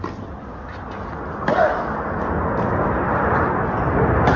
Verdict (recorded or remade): recorded